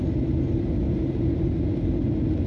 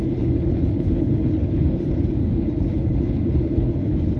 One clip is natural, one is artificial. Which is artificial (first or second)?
second